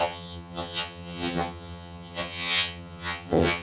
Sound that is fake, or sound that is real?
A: fake